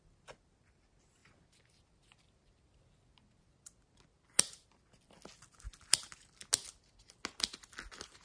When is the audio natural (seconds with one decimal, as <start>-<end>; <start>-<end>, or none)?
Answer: 0.0-8.2